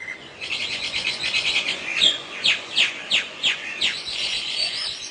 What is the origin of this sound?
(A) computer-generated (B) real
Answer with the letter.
A